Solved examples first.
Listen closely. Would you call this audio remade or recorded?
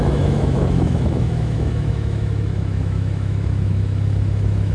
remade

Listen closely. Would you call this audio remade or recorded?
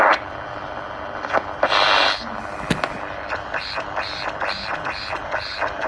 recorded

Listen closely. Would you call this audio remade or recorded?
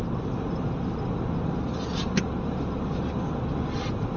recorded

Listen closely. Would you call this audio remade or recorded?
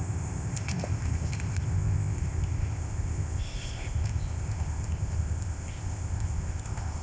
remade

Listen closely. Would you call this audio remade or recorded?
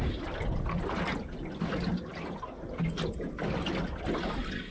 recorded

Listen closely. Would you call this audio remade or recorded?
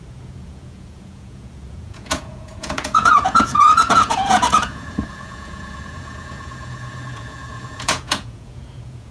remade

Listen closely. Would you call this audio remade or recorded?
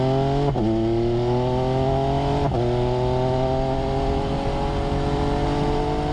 recorded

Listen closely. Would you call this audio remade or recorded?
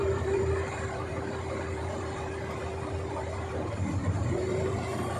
remade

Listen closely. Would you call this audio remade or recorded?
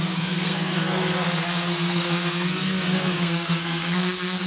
remade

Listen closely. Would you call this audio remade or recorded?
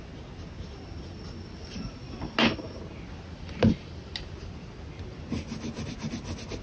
recorded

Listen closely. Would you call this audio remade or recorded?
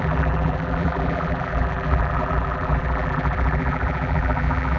remade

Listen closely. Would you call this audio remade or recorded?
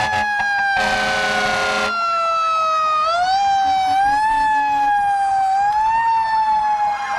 recorded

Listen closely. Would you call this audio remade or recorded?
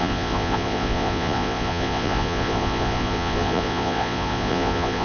remade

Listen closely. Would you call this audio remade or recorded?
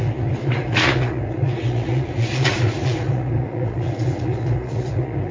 remade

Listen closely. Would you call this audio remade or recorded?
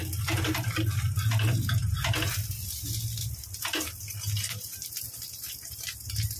recorded